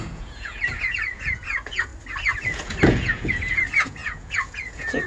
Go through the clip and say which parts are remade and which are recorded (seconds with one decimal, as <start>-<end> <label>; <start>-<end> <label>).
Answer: 0.0-1.9 remade; 1.9-2.4 recorded; 2.4-5.1 remade